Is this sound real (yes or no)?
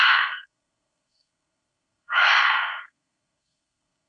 no